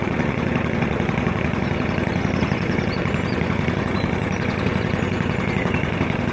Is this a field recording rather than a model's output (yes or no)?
no